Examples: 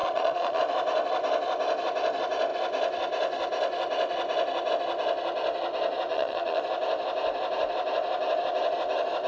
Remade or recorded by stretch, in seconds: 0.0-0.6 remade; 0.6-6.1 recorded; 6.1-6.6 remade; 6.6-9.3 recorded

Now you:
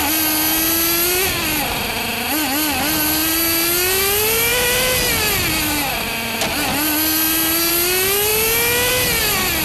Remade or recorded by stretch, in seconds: 0.0-9.6 recorded

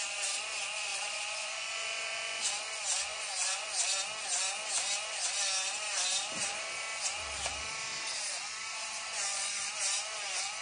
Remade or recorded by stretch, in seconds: 0.0-0.9 recorded; 0.9-2.5 remade; 2.5-3.1 recorded; 3.1-3.7 remade; 3.7-9.1 recorded; 9.1-9.7 remade; 9.7-10.6 recorded

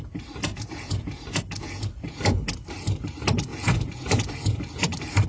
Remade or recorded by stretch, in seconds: 0.0-0.5 recorded; 0.5-2.2 remade; 2.2-3.5 recorded; 3.5-4.7 remade; 4.7-5.3 recorded

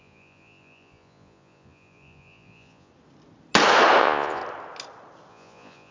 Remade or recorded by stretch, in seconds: 0.0-2.9 remade; 2.9-4.0 recorded; 4.0-4.4 remade; 4.4-5.3 recorded; 5.3-5.9 remade